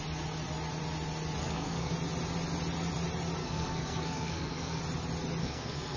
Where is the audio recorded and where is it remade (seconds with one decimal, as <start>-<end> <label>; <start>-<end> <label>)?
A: 0.0-1.4 recorded; 1.4-1.9 remade; 1.9-3.4 recorded; 3.4-4.8 remade; 4.8-5.4 recorded; 5.4-6.0 remade